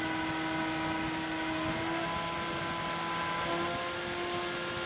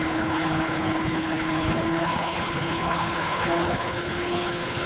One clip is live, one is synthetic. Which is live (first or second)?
first